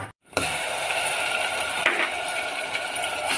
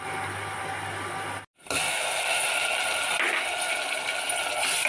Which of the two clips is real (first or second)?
second